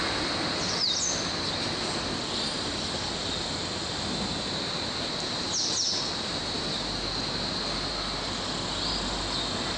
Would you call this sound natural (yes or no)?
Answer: yes